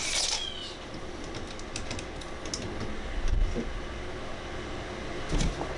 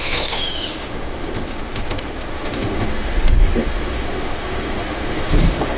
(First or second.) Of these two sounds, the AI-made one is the second